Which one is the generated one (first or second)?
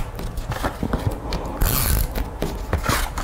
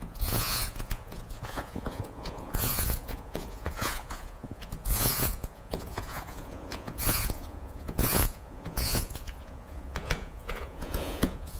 second